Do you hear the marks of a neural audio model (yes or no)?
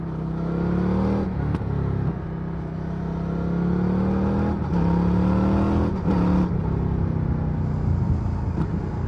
no